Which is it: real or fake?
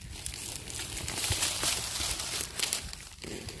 real